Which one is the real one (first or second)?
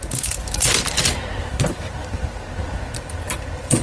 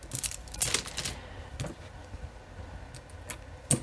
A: second